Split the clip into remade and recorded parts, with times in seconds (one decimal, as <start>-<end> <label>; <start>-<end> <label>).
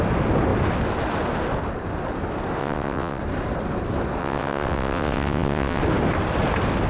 0.0-2.6 recorded; 2.6-3.2 remade; 3.2-4.2 recorded; 4.2-5.8 remade; 5.8-6.9 recorded